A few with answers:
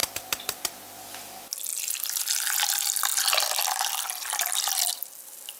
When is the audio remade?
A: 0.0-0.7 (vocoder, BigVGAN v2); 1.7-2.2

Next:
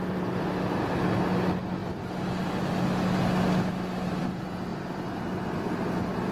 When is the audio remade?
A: 4.7-5.5 (vocoder, BigVGAN v2)

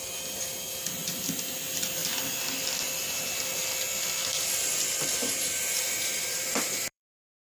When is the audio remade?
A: 5.2-7.5 (vocoder, BigVGAN v2)